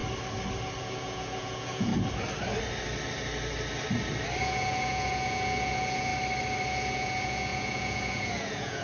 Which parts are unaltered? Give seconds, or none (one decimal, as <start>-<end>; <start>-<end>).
0.0-0.8; 1.9-4.4; 6.1-6.7